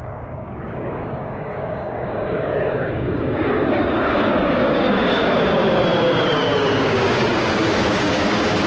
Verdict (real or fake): fake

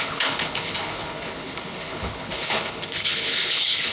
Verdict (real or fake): fake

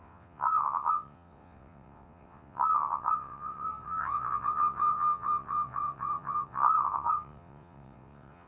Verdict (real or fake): fake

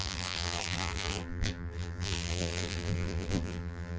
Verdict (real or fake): fake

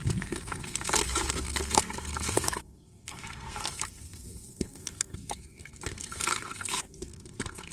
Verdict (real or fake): fake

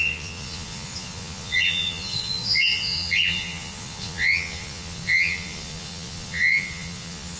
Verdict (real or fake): fake